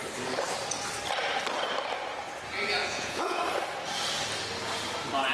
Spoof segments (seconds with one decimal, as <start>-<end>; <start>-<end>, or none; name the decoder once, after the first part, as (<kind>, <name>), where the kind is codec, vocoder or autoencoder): 2.8-3.4 (vocoder, Vocos)